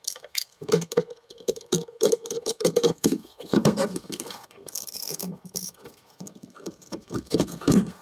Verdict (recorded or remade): remade